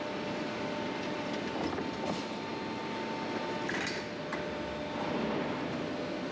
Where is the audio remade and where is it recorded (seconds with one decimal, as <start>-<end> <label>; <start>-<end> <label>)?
0.0-6.3 recorded